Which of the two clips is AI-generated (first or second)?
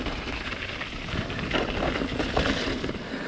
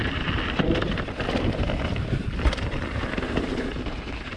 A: second